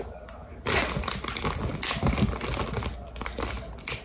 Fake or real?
real